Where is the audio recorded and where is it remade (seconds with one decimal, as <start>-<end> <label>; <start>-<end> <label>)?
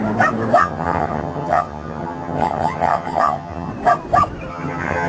0.0-0.6 recorded; 0.6-3.7 remade; 3.7-4.5 recorded; 4.5-5.1 remade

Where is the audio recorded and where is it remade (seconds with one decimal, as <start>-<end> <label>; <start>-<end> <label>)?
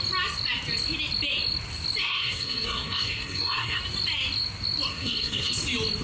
0.0-2.0 recorded; 2.0-3.8 remade; 3.8-4.9 recorded; 4.9-5.5 remade; 5.5-6.0 recorded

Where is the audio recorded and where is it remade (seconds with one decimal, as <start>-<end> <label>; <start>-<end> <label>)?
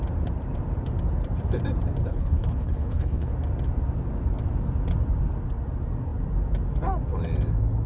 0.0-2.0 recorded; 2.0-3.3 remade; 3.3-7.9 recorded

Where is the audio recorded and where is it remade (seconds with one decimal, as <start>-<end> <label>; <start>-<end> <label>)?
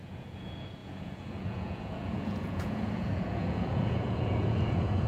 0.0-5.1 remade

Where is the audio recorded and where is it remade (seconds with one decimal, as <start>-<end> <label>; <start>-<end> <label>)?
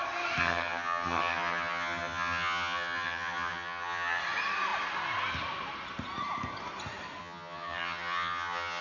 0.0-0.4 recorded; 0.4-4.2 remade; 4.2-7.2 recorded; 7.2-8.8 remade